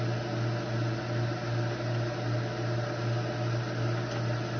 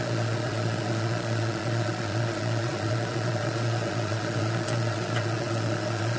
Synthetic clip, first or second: second